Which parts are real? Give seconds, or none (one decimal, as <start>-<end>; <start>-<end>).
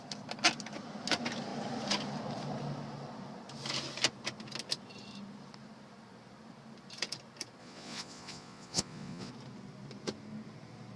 0.0-7.6; 9.3-11.0